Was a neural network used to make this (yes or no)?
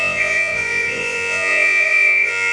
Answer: yes